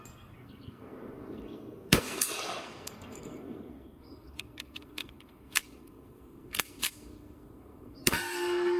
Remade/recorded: remade